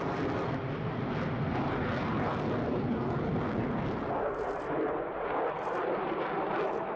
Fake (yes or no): no